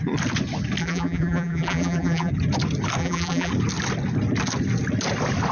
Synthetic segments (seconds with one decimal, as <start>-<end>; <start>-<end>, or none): 0.8-2.3; 3.0-3.5